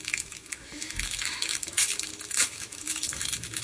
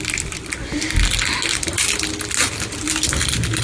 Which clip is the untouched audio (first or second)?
second